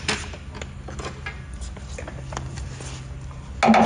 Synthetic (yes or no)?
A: no